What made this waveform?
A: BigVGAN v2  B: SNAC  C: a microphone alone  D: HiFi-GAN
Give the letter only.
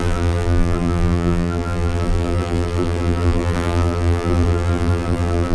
A